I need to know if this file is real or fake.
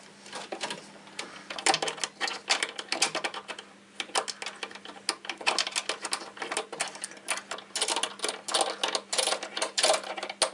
real